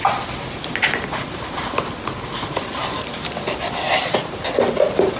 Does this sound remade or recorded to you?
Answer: recorded